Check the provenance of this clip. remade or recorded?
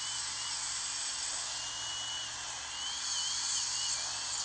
recorded